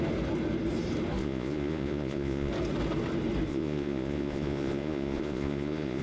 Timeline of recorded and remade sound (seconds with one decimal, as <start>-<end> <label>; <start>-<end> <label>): 0.0-1.2 recorded; 1.2-2.5 remade; 2.5-3.5 recorded; 3.5-6.0 remade